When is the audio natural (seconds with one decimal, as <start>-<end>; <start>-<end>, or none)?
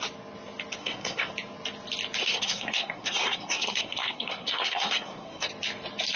0.0-0.8; 1.3-2.2; 5.5-6.2